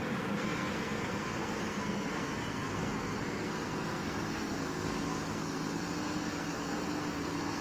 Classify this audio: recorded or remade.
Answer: remade